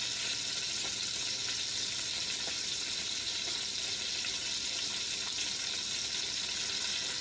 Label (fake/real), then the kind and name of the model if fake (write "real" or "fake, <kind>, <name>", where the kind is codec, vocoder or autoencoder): real